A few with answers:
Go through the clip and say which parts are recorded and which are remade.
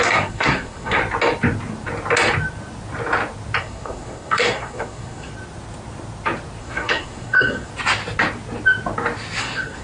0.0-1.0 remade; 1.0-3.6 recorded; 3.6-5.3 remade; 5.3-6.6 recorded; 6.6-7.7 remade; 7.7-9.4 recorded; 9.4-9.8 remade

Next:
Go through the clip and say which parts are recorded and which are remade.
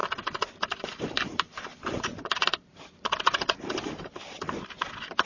0.0-1.5 recorded; 1.5-4.4 remade; 4.4-5.3 recorded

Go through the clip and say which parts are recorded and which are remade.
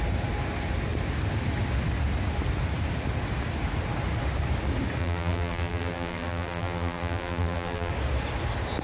0.0-5.0 recorded; 5.0-7.9 remade; 7.9-8.8 recorded